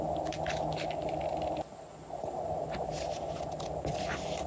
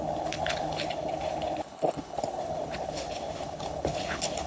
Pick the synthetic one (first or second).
second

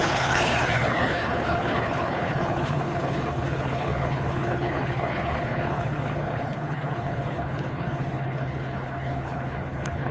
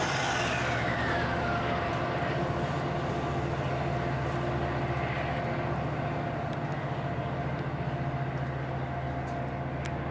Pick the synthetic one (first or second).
first